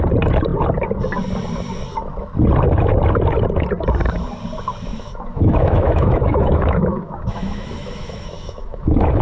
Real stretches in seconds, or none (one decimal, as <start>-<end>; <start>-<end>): 0.0-4.9

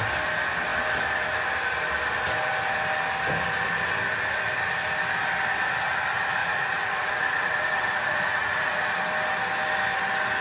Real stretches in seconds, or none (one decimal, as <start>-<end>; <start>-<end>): 0.0-6.4; 8.9-10.4

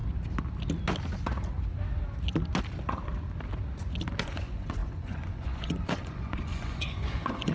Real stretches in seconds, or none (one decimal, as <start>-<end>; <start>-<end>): 0.0-4.2

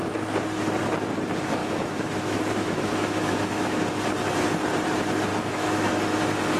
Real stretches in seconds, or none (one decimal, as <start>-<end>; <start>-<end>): 0.0-1.6; 3.8-5.3; 5.9-6.6

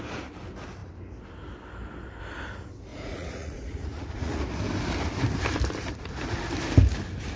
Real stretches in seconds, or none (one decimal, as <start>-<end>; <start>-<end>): 0.0-2.9; 4.4-7.4

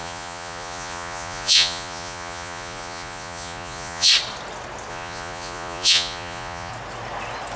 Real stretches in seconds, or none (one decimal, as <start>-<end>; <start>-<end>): 4.1-4.9; 6.7-7.6

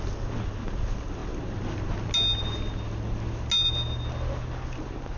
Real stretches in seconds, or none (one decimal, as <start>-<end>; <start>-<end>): 0.0-5.2